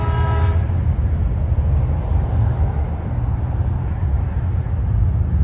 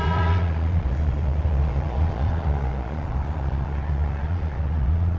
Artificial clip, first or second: second